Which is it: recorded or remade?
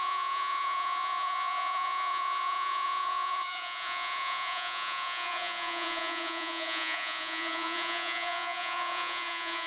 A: remade